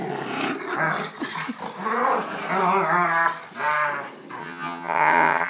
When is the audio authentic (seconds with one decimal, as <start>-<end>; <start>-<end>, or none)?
0.0-4.4